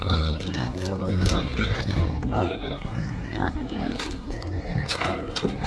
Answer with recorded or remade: remade